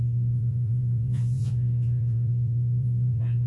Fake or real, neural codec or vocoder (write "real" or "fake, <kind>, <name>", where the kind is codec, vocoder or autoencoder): fake, vocoder, Vocos